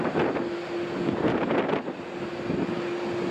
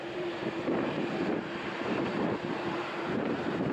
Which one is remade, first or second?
second